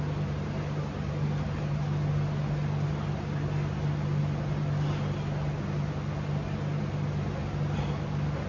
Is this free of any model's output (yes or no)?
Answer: yes